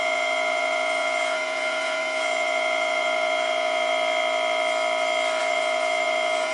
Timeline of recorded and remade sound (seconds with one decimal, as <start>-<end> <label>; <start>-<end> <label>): 0.0-3.9 remade; 3.9-5.4 recorded; 5.4-6.5 remade